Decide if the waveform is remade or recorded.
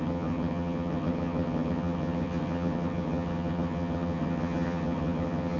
remade